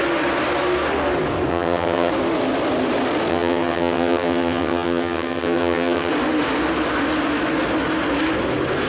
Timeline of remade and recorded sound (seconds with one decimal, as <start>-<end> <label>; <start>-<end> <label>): 0.0-1.5 recorded; 1.5-2.1 remade; 2.1-3.3 recorded; 3.3-6.1 remade; 6.1-8.9 recorded